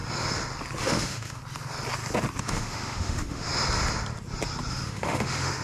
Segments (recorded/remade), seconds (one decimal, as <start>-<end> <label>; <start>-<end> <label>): 0.0-0.8 recorded; 0.8-1.4 remade; 1.4-2.4 recorded; 2.4-3.5 remade; 3.5-4.7 recorded; 4.7-5.6 remade